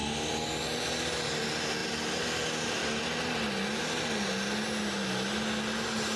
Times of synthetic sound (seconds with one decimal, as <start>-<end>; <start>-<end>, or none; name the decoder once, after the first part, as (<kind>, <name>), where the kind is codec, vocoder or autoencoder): none